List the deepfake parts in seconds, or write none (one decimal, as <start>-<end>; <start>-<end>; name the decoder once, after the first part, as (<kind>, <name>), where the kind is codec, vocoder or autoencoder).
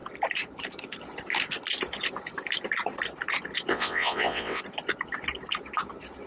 3.7-4.6 (vocoder, WaveNeXt)